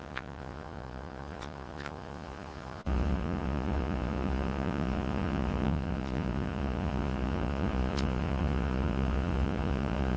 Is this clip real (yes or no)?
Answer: no